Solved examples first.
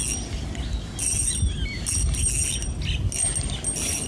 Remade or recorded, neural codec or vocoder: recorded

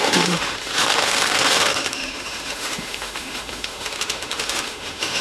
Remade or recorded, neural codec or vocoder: remade, autoencoder, DAC-VAE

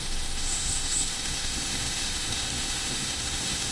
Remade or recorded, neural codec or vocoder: remade, autoencoder, DAC-VAE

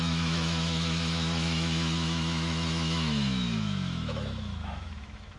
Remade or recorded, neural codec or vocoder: remade, autoencoder, DAC-VAE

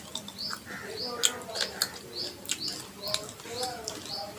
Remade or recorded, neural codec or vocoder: recorded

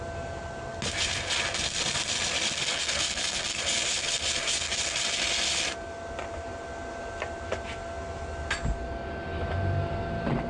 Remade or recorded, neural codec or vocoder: recorded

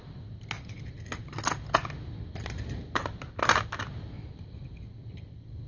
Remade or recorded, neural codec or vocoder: recorded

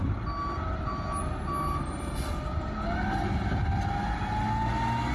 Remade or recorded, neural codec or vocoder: recorded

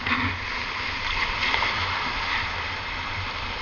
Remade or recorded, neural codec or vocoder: recorded